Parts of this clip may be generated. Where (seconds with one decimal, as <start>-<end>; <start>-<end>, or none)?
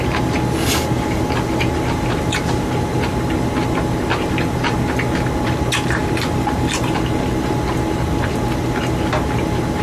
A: none